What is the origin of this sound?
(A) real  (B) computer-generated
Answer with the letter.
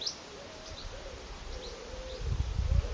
A